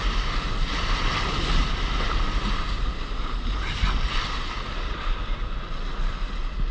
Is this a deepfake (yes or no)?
no